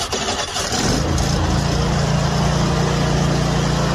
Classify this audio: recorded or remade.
recorded